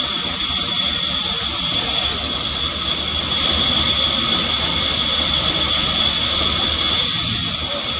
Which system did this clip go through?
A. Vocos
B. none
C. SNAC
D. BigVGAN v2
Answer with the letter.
B